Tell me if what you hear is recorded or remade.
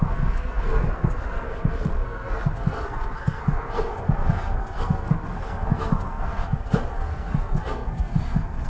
remade